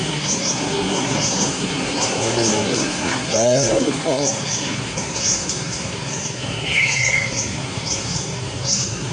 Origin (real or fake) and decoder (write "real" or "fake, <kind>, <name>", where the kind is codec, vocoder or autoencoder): fake, codec, SNAC